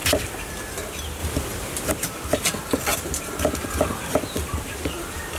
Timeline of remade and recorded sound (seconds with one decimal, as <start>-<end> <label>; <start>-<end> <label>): 0.0-0.5 remade; 0.5-2.9 recorded; 2.9-4.6 remade; 4.6-5.4 recorded